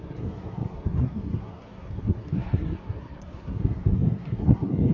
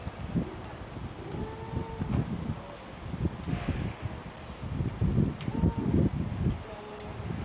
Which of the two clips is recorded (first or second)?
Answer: second